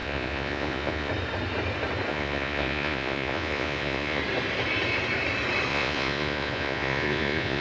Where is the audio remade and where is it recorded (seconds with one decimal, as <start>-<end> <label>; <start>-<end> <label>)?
0.0-1.1 remade; 1.1-2.1 recorded; 2.1-4.2 remade; 4.2-5.7 recorded; 5.7-7.6 remade